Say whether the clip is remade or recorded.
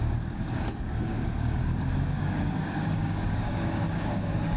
remade